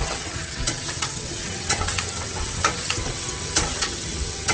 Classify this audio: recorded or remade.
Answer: remade